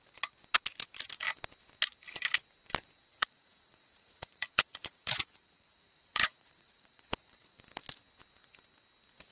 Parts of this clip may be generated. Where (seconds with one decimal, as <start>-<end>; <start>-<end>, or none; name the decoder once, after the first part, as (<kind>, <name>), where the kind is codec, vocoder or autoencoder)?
3.1-7.6 (vocoder, Vocos)